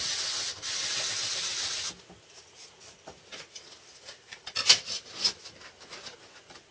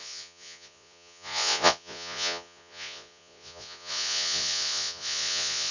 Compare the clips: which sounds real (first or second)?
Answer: first